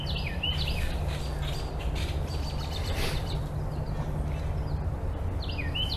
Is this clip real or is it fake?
real